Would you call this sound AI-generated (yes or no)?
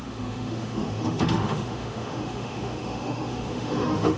yes